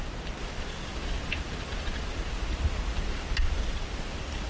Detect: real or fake real